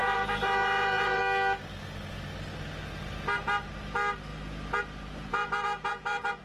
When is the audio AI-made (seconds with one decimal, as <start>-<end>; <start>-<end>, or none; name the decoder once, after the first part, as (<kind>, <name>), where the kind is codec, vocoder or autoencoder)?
0.0-1.2 (vocoder, Vocos); 5.3-6.4